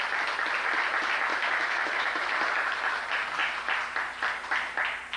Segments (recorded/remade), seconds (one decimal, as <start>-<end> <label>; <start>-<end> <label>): 0.0-1.3 recorded; 1.3-2.4 remade; 2.4-5.2 recorded